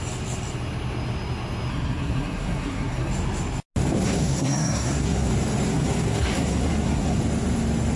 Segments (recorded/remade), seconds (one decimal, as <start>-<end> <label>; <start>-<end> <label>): 0.0-1.7 recorded; 1.7-3.1 remade; 3.1-4.0 recorded; 4.0-5.3 remade; 5.3-5.7 recorded; 5.7-7.2 remade; 7.2-8.0 recorded